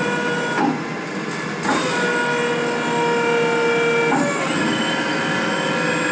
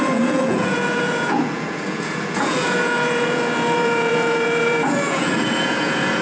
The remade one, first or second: second